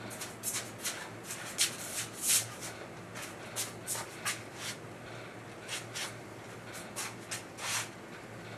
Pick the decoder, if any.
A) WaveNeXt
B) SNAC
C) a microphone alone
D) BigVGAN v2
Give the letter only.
C